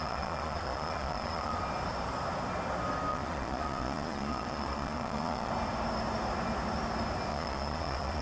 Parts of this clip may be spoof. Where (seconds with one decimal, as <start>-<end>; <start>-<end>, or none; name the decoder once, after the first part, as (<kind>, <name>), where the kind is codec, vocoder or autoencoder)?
0.0-1.6 (vocoder, Vocos); 3.1-5.5; 7.3-8.2